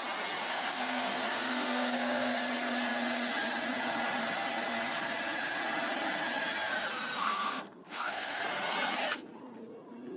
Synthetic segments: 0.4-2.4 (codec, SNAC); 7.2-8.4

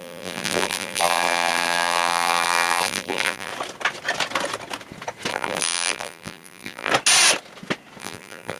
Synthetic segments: 0.0-3.5 (vocoder, BigVGAN v2); 5.3-6.9; 8.0-8.6

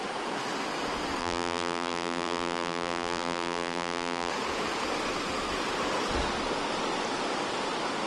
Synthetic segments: 1.2-4.3 (vocoder, BigVGAN v2)

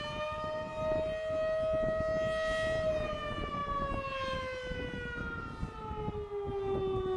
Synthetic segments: none

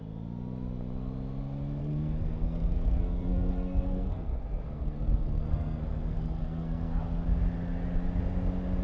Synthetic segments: 1.8-7.0 (codec, SNAC)

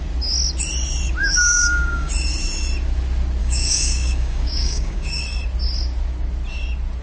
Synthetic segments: 1.2-2.1 (codec, DAC); 3.4-5.2

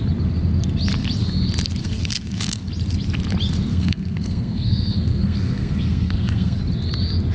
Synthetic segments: 1.8-2.7 (codec, SNAC); 3.7-6.6

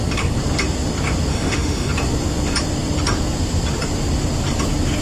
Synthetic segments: 1.3-1.9 (autoencoder, DAC-VAE)